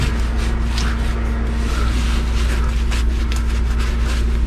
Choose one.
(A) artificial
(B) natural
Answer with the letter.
B